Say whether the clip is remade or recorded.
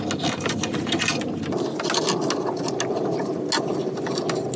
recorded